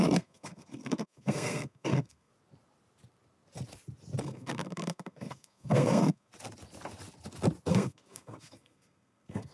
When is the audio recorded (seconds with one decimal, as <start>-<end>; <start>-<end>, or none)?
2.3-4.2; 6.3-7.7